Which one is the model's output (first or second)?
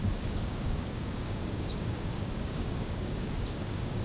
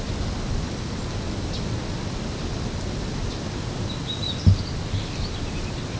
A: first